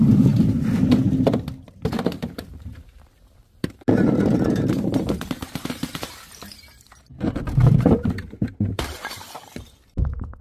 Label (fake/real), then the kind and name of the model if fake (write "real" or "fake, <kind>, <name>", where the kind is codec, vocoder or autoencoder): fake, vocoder, BigVGAN v2